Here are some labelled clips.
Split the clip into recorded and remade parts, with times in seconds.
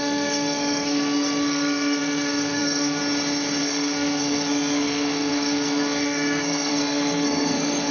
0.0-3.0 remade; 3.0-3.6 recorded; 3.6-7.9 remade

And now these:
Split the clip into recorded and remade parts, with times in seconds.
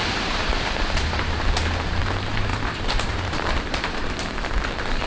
0.0-2.0 remade; 2.0-2.5 recorded; 2.5-4.1 remade; 4.1-5.1 recorded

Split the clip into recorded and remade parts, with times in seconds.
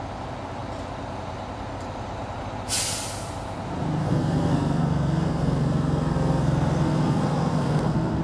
0.0-4.0 recorded; 4.0-8.2 remade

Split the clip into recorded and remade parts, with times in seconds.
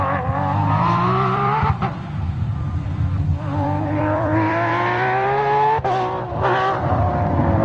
0.0-7.6 remade